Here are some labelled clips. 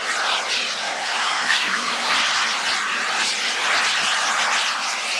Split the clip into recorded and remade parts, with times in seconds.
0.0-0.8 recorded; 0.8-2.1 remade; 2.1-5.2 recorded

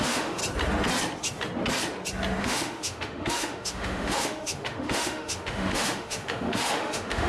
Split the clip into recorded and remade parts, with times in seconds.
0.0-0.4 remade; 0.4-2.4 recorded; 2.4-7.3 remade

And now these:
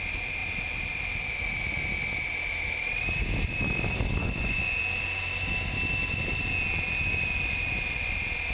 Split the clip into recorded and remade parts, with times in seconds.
0.0-4.2 recorded; 4.2-4.8 remade; 4.8-8.5 recorded

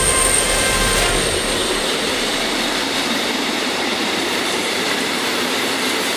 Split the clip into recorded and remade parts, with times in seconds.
0.0-1.6 recorded; 1.6-5.3 remade; 5.3-6.2 recorded

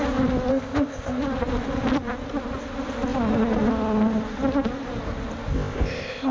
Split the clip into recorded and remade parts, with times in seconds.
0.0-0.5 recorded; 0.5-1.2 remade; 1.2-5.5 recorded; 5.5-6.3 remade

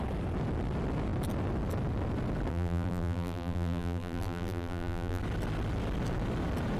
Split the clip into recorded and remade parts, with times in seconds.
0.0-2.5 recorded; 2.5-5.2 remade; 5.2-6.8 recorded

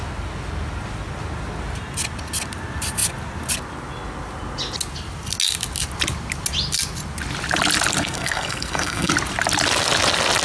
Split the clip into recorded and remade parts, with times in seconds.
0.0-8.0 recorded; 8.0-9.1 remade; 9.1-10.4 recorded